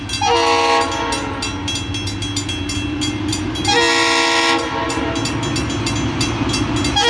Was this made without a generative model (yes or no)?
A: yes